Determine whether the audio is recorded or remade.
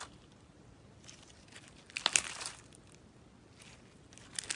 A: recorded